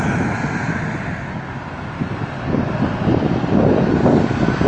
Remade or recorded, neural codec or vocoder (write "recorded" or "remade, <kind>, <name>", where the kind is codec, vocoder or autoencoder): recorded